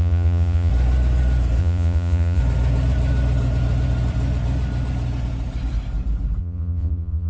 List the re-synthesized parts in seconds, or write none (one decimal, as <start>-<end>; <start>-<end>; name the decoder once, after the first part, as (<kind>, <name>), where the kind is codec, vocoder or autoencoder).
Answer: 0.0-0.7 (vocoder, Vocos); 1.6-2.4; 6.4-7.3